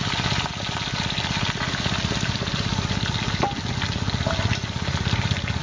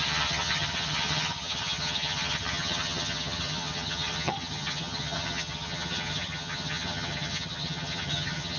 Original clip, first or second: first